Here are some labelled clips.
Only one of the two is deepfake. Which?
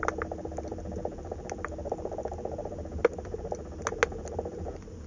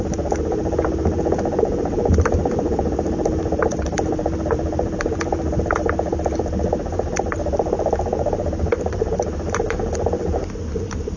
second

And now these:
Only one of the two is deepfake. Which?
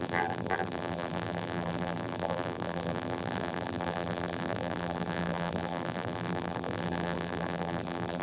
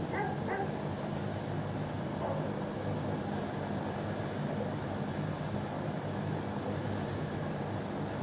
first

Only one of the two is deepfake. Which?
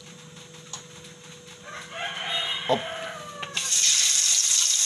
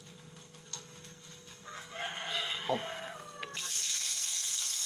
second